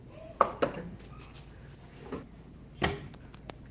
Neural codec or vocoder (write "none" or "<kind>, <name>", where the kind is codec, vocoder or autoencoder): none